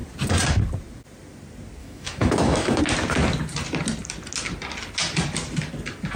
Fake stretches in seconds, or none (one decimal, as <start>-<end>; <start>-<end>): 1.8-2.8